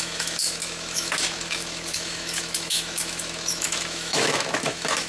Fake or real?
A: fake